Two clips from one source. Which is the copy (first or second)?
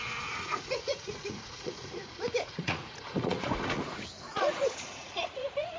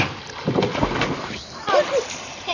first